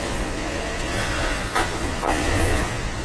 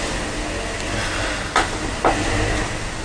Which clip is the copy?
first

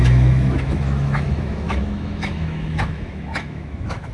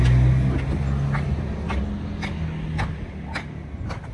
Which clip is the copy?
first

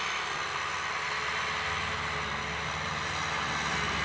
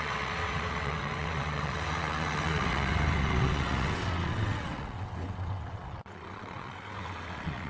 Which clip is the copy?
second